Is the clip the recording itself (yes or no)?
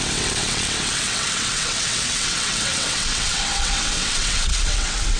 no